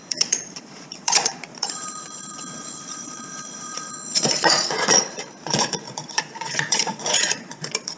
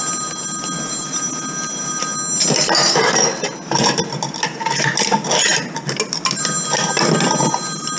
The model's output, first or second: first